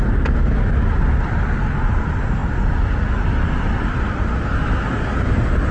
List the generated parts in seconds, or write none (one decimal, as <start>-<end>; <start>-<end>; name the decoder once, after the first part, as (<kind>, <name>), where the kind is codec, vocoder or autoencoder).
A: none

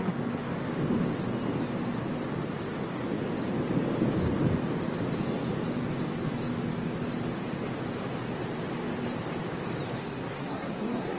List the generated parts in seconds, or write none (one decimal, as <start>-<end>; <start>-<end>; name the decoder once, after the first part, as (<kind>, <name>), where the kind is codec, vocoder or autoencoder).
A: 10.0-11.2 (codec, SNAC)

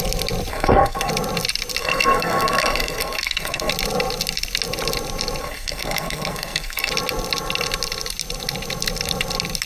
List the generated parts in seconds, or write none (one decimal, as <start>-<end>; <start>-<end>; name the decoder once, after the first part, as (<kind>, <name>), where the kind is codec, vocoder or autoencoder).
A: 0.5-1.1 (codec, SNAC); 1.8-3.7; 5.4-6.9

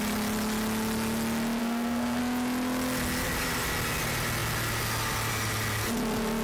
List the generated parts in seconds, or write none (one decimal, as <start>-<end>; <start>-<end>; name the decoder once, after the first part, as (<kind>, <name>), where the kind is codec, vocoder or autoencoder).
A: 1.6-2.2 (codec, SNAC)

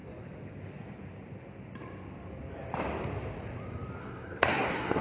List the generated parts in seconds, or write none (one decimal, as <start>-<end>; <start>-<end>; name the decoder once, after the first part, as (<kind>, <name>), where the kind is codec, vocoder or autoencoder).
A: 4.0-5.0 (codec, SNAC)

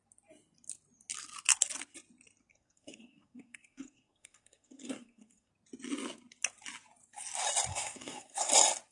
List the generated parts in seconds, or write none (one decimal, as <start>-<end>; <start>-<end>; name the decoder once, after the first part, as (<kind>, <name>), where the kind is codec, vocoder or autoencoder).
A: 2.5-5.5 (codec, SNAC); 7.7-8.5

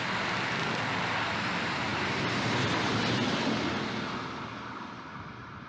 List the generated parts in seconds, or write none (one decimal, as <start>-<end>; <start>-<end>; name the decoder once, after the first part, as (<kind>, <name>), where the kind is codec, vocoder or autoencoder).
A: none